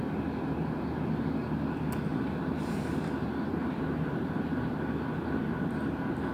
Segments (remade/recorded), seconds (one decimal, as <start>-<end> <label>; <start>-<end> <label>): 0.0-2.1 recorded; 2.1-6.3 remade